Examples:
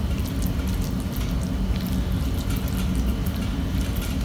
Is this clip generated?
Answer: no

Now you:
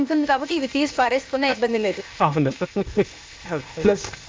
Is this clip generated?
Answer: yes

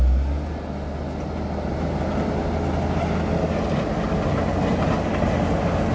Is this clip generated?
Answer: no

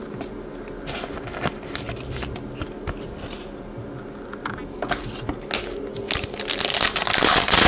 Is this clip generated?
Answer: no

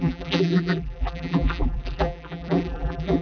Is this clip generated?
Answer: yes